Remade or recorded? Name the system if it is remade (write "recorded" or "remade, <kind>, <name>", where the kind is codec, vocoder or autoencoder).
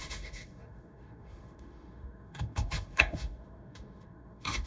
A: remade, autoencoder, DAC-VAE